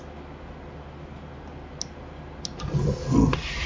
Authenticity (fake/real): real